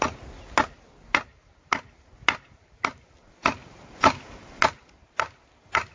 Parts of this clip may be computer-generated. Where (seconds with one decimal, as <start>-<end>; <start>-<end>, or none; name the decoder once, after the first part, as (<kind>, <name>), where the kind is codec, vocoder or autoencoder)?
none